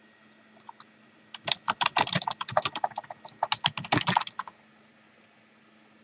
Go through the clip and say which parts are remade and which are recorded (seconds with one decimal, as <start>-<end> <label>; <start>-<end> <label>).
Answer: 0.0-6.0 recorded